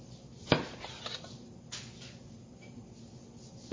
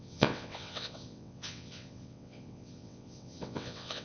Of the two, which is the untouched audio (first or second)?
first